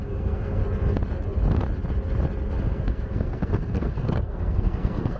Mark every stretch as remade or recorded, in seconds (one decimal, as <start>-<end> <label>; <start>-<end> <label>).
0.0-0.6 remade; 0.6-2.6 recorded; 2.6-5.2 remade